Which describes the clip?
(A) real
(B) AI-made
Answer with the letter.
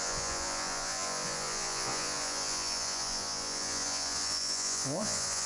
B